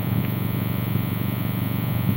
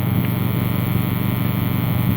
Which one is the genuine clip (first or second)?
second